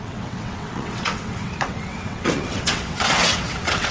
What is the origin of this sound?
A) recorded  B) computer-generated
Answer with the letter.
B